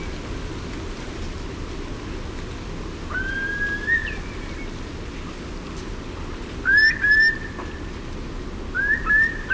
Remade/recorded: recorded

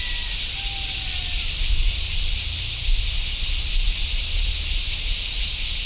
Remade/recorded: recorded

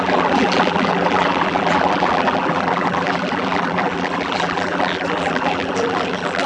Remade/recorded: remade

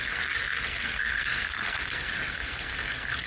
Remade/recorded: remade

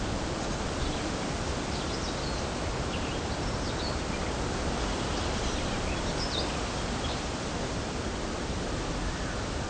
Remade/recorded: recorded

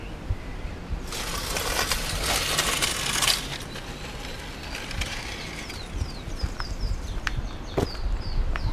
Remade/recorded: recorded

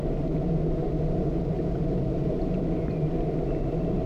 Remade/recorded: recorded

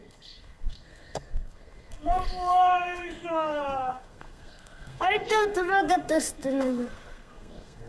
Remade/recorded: remade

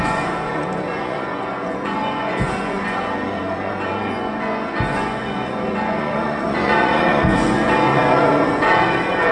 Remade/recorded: remade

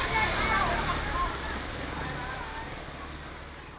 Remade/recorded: recorded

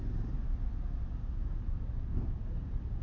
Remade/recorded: recorded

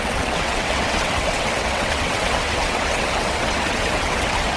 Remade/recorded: remade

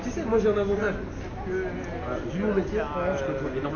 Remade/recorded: recorded